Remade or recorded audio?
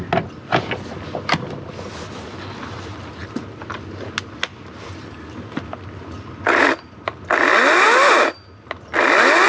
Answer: recorded